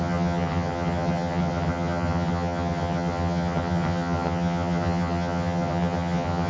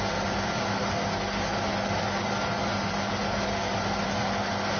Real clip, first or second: second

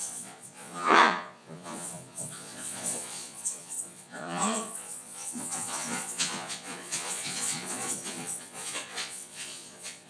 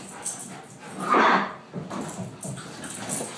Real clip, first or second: second